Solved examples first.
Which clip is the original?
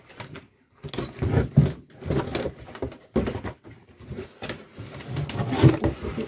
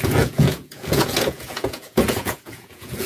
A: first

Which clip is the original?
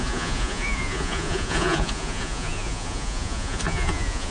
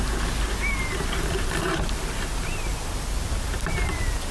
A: second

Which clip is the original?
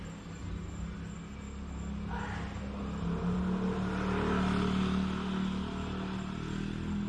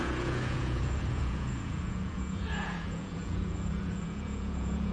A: first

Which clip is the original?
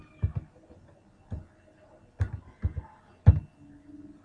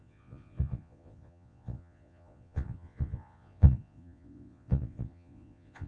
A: first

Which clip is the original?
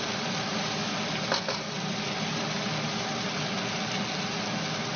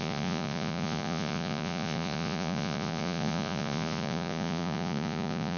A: first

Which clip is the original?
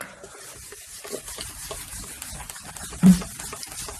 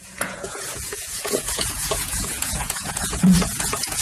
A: first